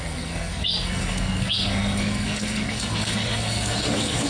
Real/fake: fake